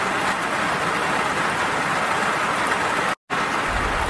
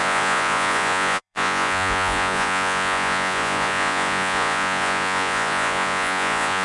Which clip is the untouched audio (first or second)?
first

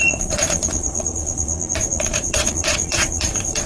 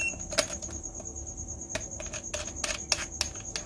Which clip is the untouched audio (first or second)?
second